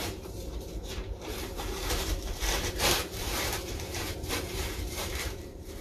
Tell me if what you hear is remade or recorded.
remade